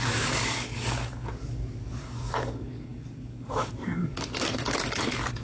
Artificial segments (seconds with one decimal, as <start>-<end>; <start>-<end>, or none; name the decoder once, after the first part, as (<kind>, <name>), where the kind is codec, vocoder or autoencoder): 0.0-5.4 (codec, DAC)